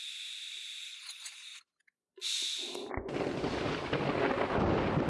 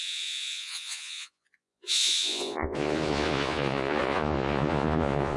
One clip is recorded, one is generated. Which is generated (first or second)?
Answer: second